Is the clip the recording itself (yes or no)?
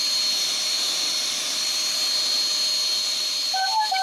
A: yes